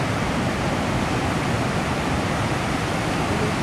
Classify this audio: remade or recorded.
remade